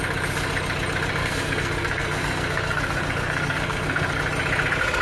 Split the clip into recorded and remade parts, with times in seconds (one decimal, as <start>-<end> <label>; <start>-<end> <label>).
0.0-1.2 recorded; 1.2-4.2 remade; 4.2-5.0 recorded